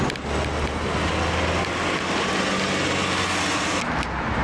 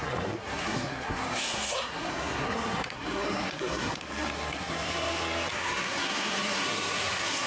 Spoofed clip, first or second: second